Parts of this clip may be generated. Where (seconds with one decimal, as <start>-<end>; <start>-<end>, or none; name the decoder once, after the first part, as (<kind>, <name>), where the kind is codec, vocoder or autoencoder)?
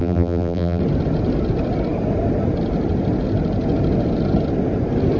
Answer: 0.0-0.8 (vocoder, BigVGAN v2)